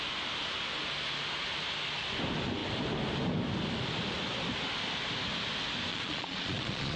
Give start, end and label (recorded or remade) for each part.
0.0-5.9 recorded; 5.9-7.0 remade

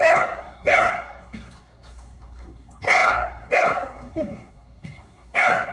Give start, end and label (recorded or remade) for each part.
0.0-5.7 remade

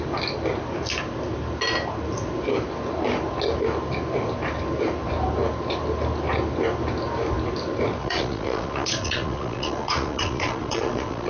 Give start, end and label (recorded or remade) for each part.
0.0-8.0 recorded; 8.0-11.3 remade

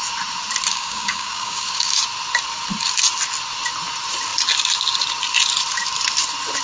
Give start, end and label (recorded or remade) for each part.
0.0-0.7 recorded; 0.7-2.0 remade; 2.0-6.6 recorded

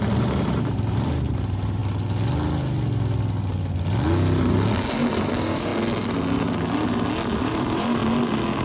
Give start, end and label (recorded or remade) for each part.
0.0-1.8 remade; 1.8-5.1 recorded; 5.1-5.7 remade; 5.7-7.4 recorded; 7.4-8.0 remade; 8.0-8.6 recorded

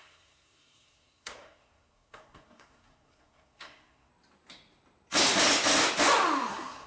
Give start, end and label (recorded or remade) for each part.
0.0-4.1 remade; 4.1-6.5 recorded; 6.5-6.9 remade

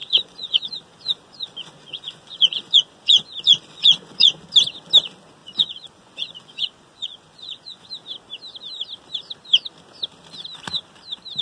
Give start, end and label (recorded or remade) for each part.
0.0-4.4 remade; 4.4-5.4 recorded; 5.4-7.9 remade; 7.9-11.4 recorded